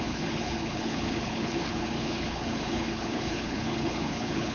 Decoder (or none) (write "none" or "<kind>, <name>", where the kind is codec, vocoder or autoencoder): codec, HILCodec